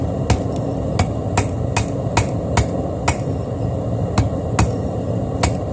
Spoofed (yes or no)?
no